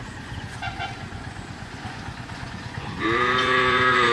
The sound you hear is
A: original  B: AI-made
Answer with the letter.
B